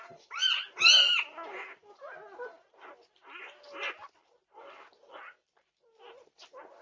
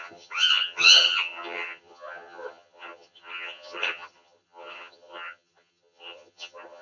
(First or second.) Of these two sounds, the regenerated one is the second